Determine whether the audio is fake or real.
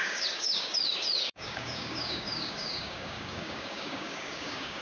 fake